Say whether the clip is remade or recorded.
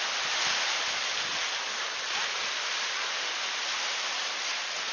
recorded